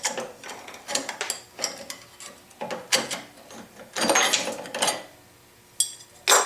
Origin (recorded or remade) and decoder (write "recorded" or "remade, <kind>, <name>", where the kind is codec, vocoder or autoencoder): recorded